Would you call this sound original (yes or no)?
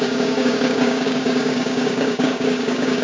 no